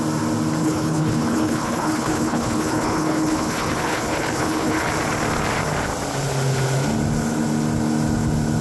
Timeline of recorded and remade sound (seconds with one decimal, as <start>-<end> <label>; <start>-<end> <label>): 0.0-0.6 recorded; 0.6-4.9 remade; 4.9-8.6 recorded